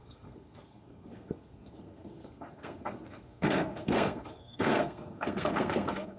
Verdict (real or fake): fake